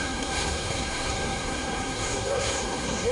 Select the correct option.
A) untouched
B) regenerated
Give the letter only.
B